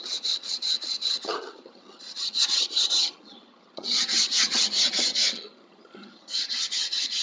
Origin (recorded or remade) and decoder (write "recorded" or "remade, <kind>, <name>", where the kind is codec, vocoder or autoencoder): remade, vocoder, HiFi-GAN